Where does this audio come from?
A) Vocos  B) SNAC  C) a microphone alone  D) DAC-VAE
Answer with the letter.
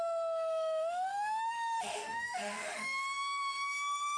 D